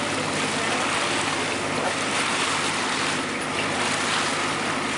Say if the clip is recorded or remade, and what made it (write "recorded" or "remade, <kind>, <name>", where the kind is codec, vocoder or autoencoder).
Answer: remade, vocoder, BigVGAN v2